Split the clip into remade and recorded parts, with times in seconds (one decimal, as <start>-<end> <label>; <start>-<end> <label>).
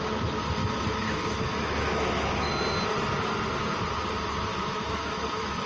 0.0-0.6 recorded; 0.6-2.5 remade; 2.5-4.5 recorded; 4.5-5.7 remade